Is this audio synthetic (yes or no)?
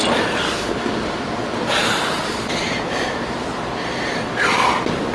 yes